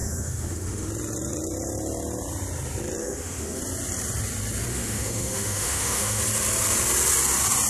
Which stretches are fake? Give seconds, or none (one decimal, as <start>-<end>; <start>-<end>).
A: 0.0-0.9; 3.0-3.6; 4.7-6.2